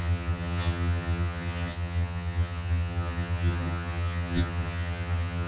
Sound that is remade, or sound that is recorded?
remade